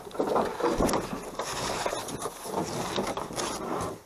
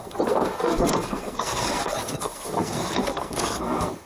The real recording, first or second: first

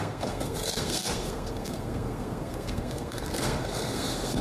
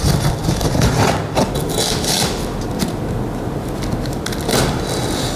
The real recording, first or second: second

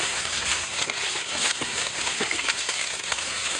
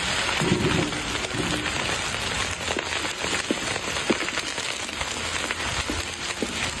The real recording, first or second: second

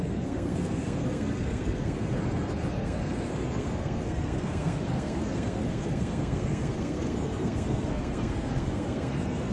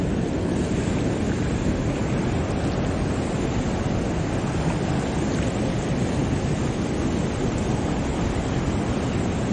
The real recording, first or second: second